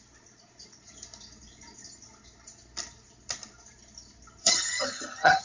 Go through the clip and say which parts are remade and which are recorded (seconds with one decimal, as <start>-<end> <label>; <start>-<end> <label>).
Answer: 0.0-4.4 recorded; 4.4-5.4 remade